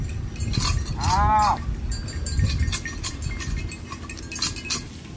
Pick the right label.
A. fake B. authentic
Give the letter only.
B